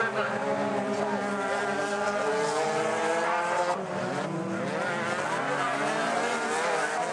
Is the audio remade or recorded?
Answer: recorded